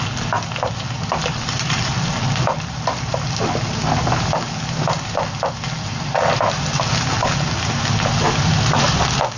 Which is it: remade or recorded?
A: recorded